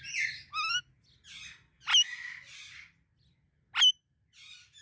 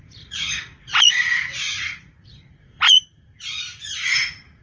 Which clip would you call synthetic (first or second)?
second